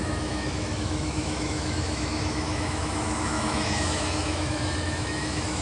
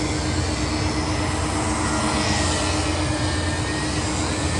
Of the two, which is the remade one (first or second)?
first